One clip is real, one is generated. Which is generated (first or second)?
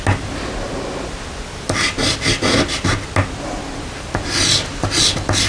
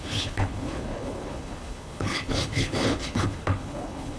second